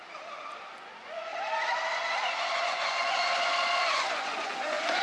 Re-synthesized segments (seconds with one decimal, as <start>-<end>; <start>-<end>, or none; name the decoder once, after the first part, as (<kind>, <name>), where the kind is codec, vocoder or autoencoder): 0.6-1.3 (vocoder, Vocos); 2.6-3.3; 3.8-5.0